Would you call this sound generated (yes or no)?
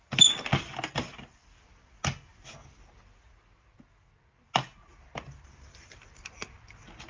no